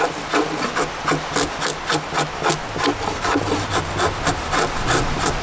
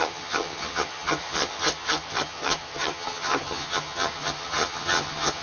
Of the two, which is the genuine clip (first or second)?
first